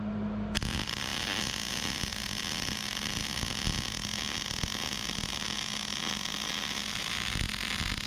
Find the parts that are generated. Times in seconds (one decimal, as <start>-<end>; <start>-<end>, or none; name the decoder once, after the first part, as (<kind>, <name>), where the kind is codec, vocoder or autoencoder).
none